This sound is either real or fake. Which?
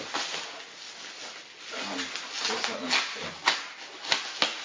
real